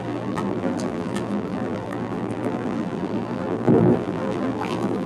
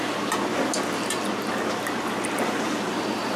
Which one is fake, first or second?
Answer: first